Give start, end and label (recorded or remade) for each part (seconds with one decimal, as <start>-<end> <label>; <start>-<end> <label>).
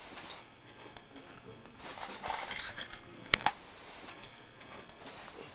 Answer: 0.0-0.4 recorded; 0.4-1.8 remade; 1.8-2.7 recorded; 2.7-3.5 remade; 3.5-4.1 recorded; 4.1-5.0 remade; 5.0-5.5 recorded